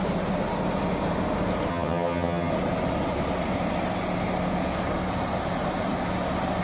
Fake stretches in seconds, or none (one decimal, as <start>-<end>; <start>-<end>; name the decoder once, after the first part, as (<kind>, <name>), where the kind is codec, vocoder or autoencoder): 1.7-2.5 (vocoder, HiFi-GAN)